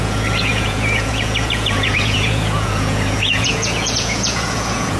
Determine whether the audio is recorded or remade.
remade